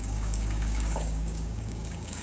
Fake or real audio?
fake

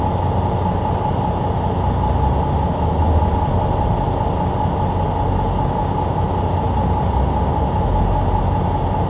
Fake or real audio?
real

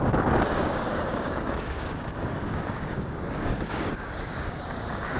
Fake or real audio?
fake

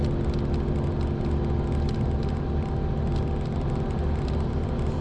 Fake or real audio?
real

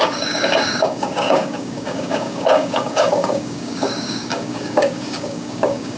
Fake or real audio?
fake